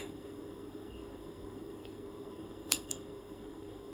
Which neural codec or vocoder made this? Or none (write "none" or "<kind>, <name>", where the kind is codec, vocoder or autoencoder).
codec, SNAC